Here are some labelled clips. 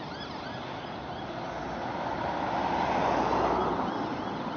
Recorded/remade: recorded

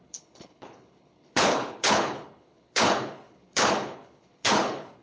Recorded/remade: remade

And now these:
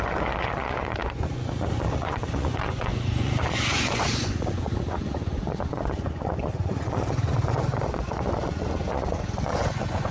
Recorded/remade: remade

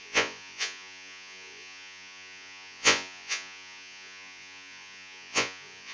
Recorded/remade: remade